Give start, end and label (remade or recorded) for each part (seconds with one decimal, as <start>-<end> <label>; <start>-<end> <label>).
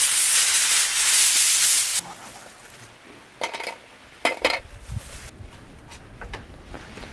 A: 0.0-7.1 recorded